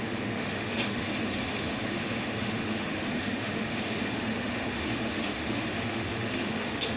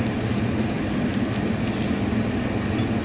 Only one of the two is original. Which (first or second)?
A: second